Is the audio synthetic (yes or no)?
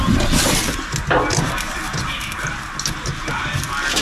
no